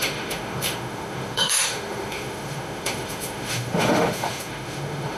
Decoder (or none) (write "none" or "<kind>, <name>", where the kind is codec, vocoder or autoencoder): autoencoder, DAC-VAE